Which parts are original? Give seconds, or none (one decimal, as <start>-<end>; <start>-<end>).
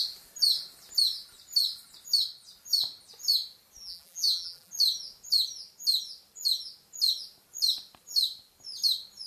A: 0.0-3.8; 4.7-9.3